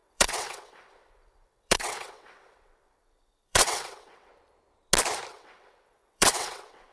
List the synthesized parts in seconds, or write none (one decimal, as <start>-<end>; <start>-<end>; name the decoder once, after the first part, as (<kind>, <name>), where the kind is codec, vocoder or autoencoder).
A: 0.0-4.3 (vocoder, WaveNeXt); 5.3-6.9